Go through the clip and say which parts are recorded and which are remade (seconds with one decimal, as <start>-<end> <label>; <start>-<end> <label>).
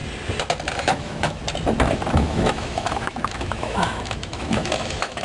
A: 0.0-0.9 recorded; 0.9-1.4 remade; 1.4-2.1 recorded; 2.1-5.2 remade